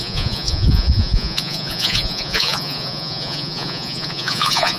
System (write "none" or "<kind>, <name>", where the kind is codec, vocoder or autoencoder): vocoder, Vocos